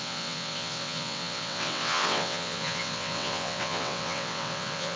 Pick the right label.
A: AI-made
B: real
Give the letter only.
A